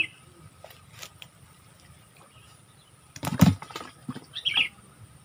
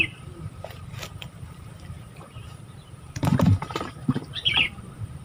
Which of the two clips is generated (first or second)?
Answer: second